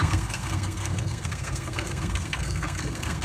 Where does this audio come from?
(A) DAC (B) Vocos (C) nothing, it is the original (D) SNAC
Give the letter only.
D